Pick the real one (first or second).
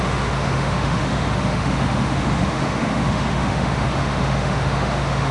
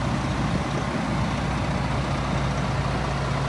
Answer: second